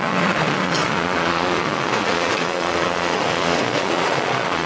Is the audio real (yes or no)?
no